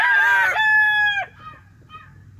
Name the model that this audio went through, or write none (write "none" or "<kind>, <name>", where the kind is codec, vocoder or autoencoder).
none